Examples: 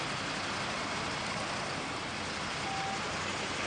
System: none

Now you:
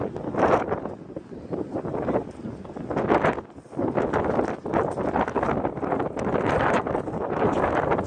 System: none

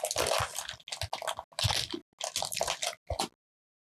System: none